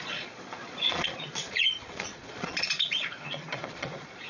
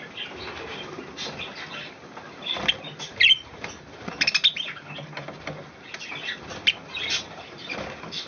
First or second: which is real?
second